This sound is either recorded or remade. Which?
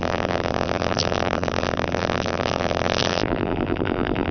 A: remade